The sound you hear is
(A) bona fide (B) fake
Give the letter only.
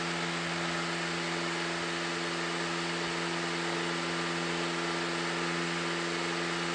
A